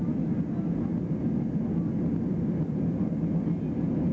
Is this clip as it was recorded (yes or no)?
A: yes